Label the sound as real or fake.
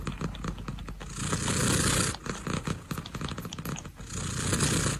real